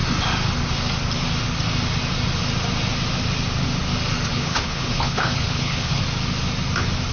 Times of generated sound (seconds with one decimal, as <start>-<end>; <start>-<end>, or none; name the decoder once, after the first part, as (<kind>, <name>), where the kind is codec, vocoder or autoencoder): 4.3-6.0 (codec, HILCodec)